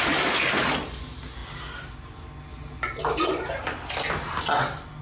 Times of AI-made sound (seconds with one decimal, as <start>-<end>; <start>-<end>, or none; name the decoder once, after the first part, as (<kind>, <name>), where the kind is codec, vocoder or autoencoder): none